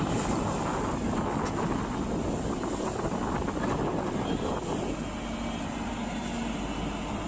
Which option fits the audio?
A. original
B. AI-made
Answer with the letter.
A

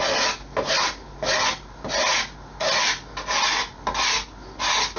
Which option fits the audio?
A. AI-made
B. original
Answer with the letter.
B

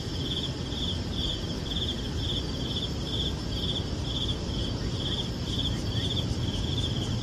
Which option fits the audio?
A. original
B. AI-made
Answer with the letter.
B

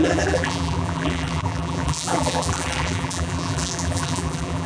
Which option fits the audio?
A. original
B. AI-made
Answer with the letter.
B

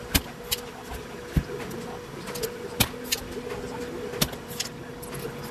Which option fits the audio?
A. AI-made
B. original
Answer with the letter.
B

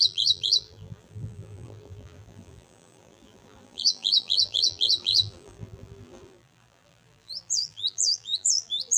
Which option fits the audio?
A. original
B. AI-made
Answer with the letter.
B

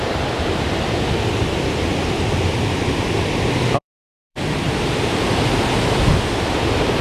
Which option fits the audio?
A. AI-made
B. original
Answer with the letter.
A